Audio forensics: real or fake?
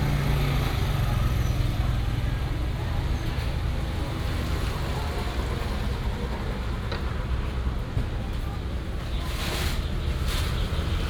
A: real